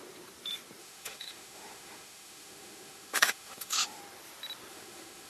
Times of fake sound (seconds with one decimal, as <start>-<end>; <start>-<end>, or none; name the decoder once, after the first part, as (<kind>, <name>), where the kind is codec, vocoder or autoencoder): 0.8-4.0 (autoencoder, DAC-VAE); 4.7-5.3